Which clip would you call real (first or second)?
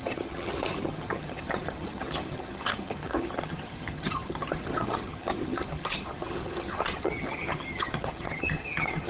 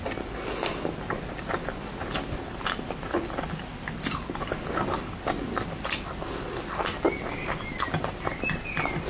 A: second